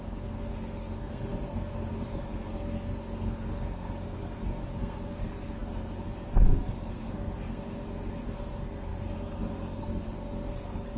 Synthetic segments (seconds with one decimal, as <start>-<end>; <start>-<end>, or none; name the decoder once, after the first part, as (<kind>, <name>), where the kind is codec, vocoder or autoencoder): 0.0-11.0 (codec, SNAC)